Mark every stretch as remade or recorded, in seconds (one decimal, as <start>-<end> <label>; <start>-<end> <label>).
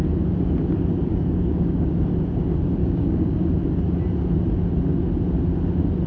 0.0-1.1 recorded; 1.1-1.9 remade; 1.9-2.8 recorded; 2.8-3.5 remade; 3.5-6.1 recorded